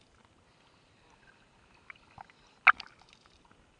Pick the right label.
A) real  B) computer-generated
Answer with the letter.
A